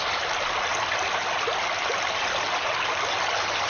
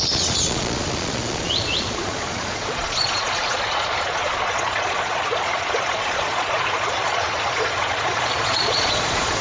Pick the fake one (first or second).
second